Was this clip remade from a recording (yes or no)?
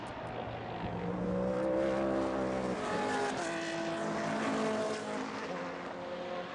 no